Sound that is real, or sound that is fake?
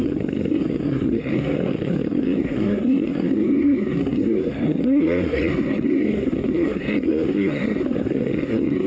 fake